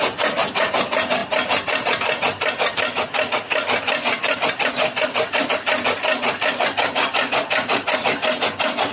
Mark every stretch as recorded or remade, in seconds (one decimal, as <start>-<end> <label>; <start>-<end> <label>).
0.0-8.9 recorded